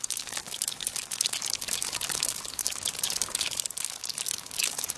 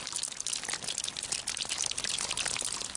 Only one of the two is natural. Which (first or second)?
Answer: second